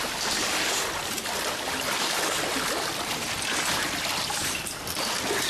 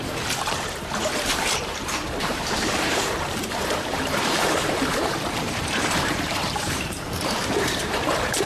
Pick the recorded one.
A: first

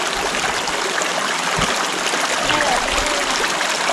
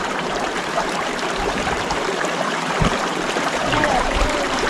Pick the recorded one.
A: first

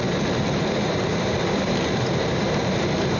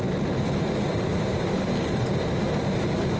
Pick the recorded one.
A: second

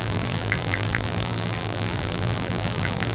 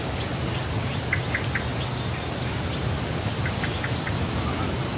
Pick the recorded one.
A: second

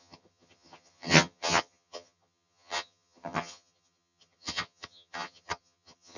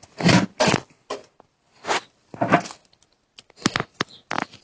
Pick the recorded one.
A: second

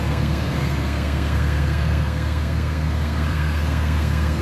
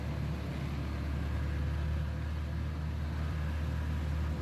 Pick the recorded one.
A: second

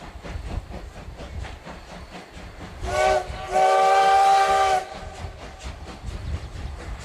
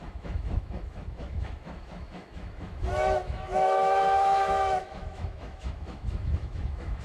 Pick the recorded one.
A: first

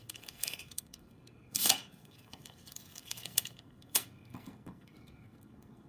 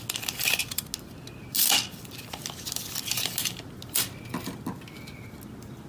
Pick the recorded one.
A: second